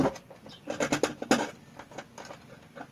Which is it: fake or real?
real